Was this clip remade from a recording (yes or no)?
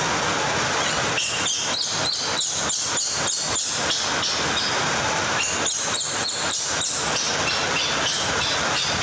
no